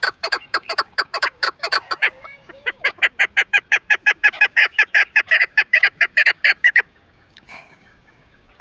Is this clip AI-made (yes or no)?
yes